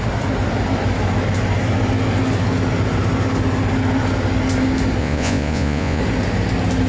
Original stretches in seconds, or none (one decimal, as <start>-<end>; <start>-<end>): 0.0-5.0; 6.0-6.9